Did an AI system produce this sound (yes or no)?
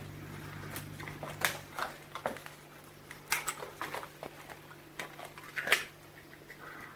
no